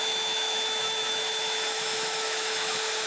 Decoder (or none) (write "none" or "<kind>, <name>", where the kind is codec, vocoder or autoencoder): autoencoder, DAC-VAE